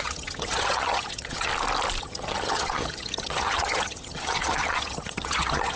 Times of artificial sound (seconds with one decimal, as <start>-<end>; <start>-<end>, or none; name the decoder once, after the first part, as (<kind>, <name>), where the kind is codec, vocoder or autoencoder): 0.0-1.5 (vocoder, HiFi-GAN); 2.0-5.8